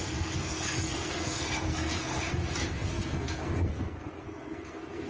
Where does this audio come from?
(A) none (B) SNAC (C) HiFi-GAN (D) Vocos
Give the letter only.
B